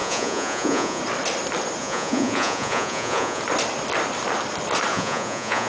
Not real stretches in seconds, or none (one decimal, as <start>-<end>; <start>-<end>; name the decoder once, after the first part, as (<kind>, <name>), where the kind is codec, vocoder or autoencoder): 0.0-1.0 (vocoder, Vocos); 1.8-3.4; 4.9-5.7